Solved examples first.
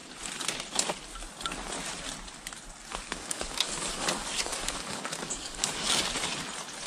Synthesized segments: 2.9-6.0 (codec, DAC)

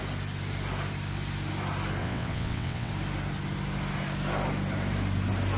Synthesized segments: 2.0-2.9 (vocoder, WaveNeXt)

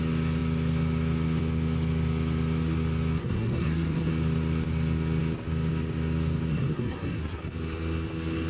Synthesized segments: 3.2-4.1 (codec, SNAC); 6.5-7.4

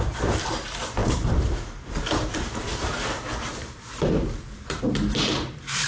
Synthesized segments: 0.0-5.9 (vocoder, BigVGAN v2)

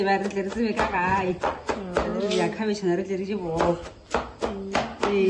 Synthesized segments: 0.9-1.7 (vocoder, Vocos)